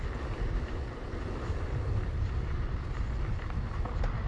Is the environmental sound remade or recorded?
remade